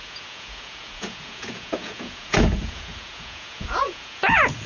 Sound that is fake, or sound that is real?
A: fake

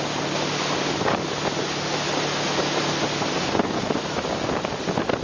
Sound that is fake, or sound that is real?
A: real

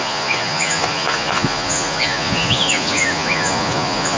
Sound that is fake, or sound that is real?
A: fake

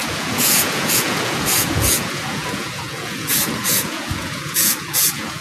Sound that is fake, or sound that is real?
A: fake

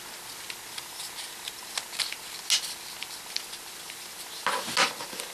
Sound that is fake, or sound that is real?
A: real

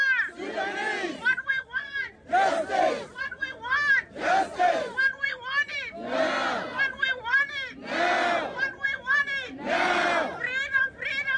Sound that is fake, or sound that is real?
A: real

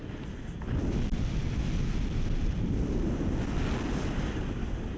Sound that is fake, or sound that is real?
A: real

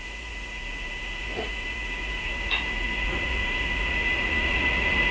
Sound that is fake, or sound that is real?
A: fake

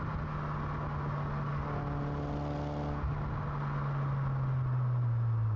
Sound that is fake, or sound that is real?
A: real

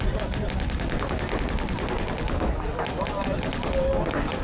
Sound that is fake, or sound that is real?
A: real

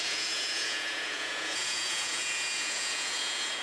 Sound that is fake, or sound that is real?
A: fake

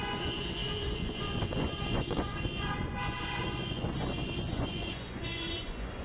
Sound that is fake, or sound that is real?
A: fake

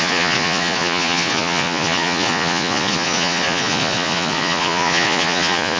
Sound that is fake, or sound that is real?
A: fake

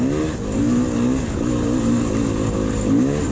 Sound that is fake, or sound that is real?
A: real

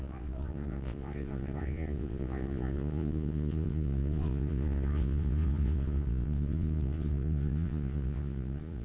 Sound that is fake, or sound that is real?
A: fake